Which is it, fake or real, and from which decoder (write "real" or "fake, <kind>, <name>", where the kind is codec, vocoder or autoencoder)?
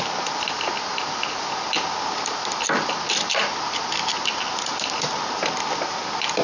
real